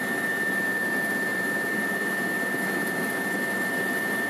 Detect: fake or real real